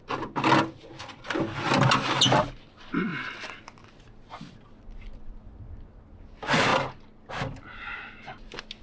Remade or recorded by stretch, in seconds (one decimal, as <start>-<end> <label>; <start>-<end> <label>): 0.0-8.8 recorded